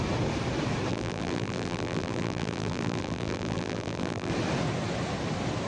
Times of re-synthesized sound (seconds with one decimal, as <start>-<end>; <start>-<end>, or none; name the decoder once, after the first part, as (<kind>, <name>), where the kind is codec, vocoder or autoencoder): 0.9-4.3 (vocoder, BigVGAN v2)